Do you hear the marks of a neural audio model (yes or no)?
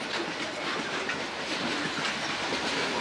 no